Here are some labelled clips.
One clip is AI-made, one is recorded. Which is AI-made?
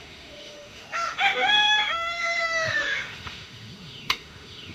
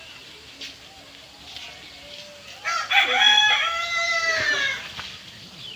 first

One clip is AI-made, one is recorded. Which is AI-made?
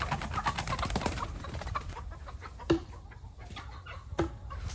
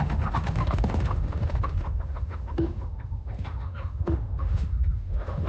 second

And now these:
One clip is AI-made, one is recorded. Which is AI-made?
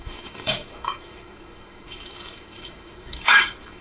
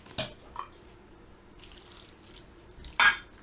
first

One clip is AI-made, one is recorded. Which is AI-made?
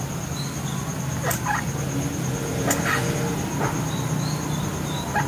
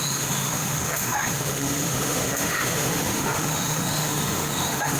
second